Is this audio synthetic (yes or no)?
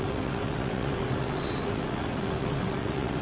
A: yes